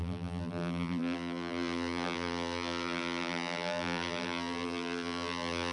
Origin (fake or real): fake